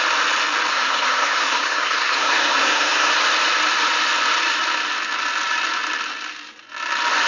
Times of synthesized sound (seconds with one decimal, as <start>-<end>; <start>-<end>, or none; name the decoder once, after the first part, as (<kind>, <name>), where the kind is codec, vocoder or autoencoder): 0.7-3.1 (codec, SNAC)